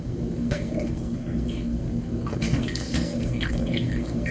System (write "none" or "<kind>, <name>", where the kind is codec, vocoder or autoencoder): codec, SNAC